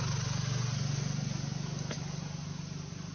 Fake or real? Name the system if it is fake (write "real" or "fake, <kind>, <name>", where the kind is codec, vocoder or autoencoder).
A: real